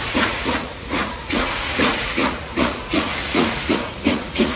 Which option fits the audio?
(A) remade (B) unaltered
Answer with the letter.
A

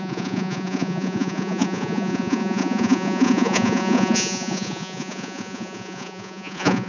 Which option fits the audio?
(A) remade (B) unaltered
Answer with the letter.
A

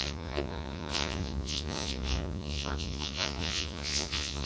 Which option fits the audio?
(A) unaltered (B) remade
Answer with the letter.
B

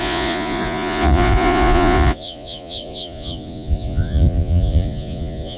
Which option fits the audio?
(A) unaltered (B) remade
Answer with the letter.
B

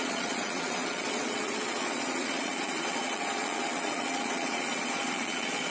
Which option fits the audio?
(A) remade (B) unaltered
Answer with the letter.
A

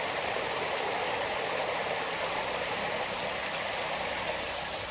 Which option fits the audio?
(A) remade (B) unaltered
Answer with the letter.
B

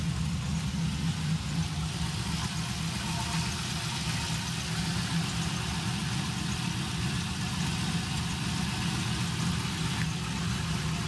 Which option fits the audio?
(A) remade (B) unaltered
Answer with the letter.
B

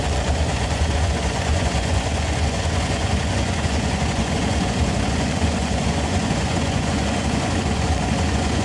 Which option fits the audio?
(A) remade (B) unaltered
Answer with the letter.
A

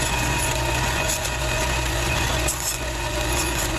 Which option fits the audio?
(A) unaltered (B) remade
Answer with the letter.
B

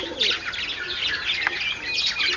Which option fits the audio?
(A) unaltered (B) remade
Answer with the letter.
A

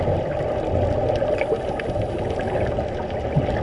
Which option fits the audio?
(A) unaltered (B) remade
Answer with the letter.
A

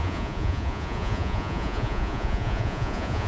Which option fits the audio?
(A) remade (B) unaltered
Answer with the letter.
A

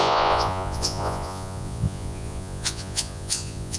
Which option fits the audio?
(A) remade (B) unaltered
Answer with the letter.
A